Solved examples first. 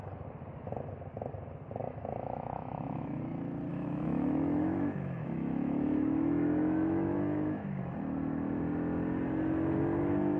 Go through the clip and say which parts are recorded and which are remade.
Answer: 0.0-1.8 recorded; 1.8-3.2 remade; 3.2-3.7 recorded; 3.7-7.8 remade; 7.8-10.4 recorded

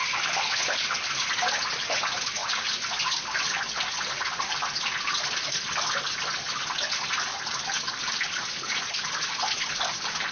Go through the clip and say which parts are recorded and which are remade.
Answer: 0.0-10.3 recorded

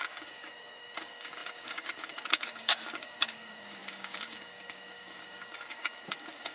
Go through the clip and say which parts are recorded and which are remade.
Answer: 0.0-6.5 remade

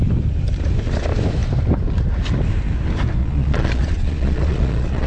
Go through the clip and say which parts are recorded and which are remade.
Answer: 0.0-3.2 recorded; 3.2-5.1 remade

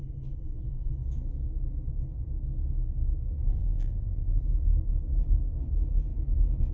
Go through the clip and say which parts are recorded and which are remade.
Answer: 0.0-3.6 recorded; 3.6-4.4 remade; 4.4-6.7 recorded

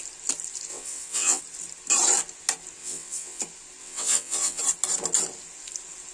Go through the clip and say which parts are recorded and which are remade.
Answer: 0.0-0.7 recorded; 0.7-1.4 remade; 1.4-2.8 recorded; 2.8-3.4 remade; 3.4-3.8 recorded; 3.8-4.6 remade; 4.6-6.1 recorded

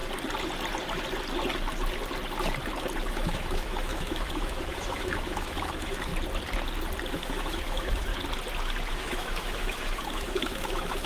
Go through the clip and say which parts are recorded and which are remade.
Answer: 0.0-3.1 recorded; 3.1-6.1 remade; 6.1-7.1 recorded; 7.1-8.1 remade; 8.1-8.9 recorded; 8.9-11.1 remade

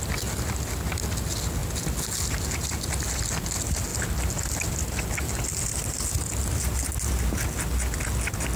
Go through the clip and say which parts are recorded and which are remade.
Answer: 0.0-8.6 recorded